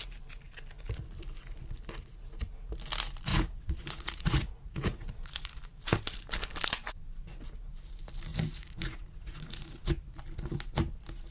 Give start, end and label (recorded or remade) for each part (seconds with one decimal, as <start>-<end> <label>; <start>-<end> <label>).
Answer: 0.0-3.3 recorded; 3.3-5.6 remade; 5.6-8.3 recorded; 8.3-9.9 remade; 9.9-11.3 recorded